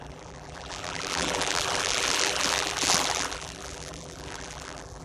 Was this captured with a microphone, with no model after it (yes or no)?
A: no